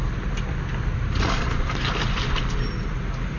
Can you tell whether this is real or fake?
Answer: real